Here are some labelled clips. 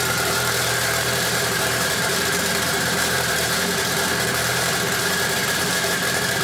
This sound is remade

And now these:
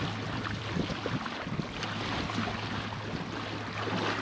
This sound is recorded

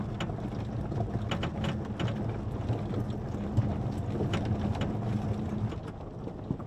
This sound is recorded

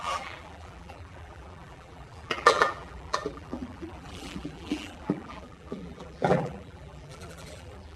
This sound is remade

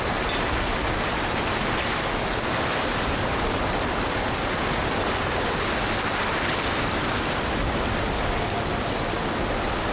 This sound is recorded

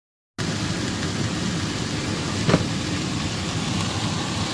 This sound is recorded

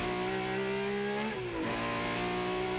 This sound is recorded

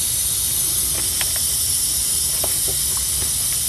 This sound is recorded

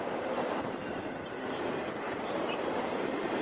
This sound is remade